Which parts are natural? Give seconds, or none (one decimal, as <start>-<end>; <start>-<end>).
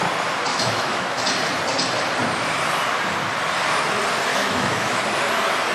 0.0-0.5; 1.2-4.3; 5.0-5.7